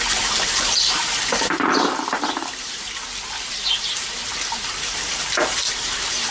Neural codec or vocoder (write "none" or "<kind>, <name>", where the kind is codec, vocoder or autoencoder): vocoder, BigVGAN v2